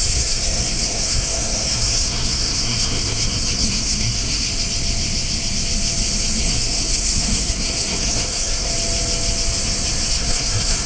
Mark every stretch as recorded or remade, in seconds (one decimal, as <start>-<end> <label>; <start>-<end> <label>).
0.0-4.5 remade; 4.5-6.4 recorded; 6.4-8.7 remade; 8.7-10.1 recorded; 10.1-10.9 remade